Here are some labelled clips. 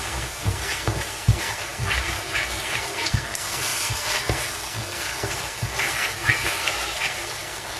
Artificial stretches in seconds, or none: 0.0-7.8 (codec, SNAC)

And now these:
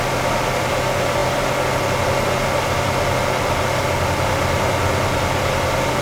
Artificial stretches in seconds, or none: none

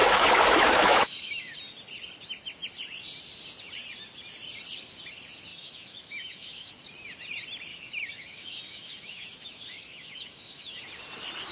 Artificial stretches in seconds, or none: 0.0-1.5 (autoencoder, DAC-VAE); 5.5-6.7; 7.7-10.8